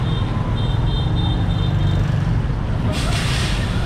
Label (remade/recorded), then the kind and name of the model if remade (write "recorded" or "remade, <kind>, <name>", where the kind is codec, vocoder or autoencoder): recorded